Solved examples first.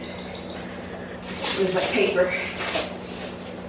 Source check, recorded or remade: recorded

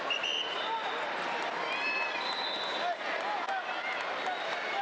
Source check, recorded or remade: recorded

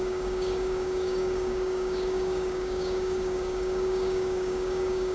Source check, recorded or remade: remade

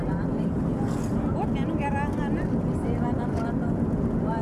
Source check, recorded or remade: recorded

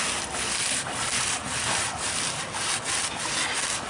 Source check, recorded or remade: recorded